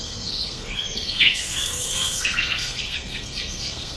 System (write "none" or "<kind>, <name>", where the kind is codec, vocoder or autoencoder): codec, SNAC